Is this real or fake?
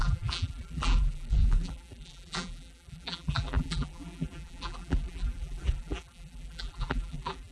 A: fake